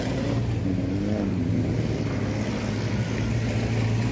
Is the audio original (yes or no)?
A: yes